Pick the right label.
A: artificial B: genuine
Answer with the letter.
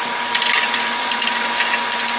B